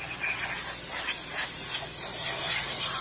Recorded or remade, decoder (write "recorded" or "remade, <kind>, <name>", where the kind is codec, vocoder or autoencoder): recorded